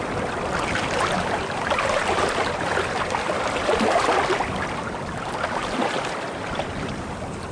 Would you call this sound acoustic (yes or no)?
yes